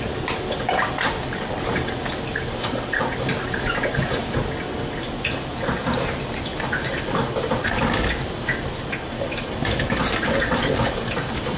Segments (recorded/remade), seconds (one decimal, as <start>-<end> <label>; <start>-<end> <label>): 0.0-11.6 recorded